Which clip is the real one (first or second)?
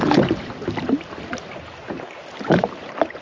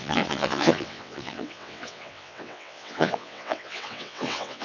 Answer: first